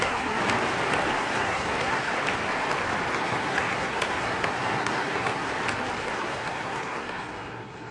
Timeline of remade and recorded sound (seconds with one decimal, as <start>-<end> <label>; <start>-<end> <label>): 0.0-0.4 remade; 0.4-1.2 recorded; 1.2-2.1 remade; 2.1-3.1 recorded; 3.1-5.5 remade; 5.5-6.0 recorded; 6.0-7.9 remade